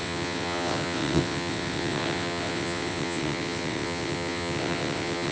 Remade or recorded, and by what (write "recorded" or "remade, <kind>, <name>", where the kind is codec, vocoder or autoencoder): remade, vocoder, WaveNeXt